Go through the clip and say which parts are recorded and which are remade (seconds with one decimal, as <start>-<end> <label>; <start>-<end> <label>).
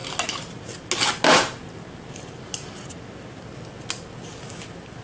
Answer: 0.0-5.0 recorded